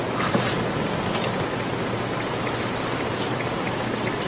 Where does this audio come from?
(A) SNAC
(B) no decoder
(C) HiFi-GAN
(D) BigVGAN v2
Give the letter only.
B